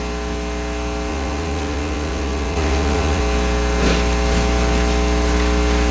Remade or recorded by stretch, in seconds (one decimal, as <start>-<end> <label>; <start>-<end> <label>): 0.0-1.1 recorded; 1.1-3.2 remade; 3.2-5.9 recorded